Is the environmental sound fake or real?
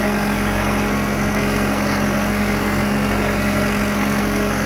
fake